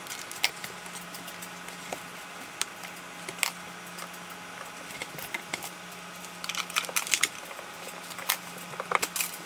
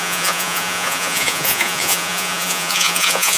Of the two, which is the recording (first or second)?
first